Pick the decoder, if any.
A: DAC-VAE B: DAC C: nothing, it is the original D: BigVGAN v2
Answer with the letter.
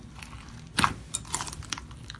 D